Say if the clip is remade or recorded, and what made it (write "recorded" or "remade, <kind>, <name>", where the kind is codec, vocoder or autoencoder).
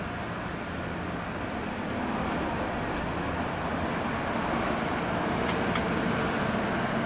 recorded